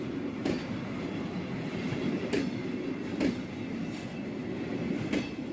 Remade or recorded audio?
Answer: recorded